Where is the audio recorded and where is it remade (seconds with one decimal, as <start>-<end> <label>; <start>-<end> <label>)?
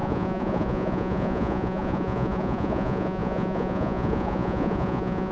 0.0-5.3 remade